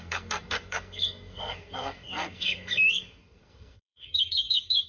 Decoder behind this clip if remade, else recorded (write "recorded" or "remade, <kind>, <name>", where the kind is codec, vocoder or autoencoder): remade, codec, SNAC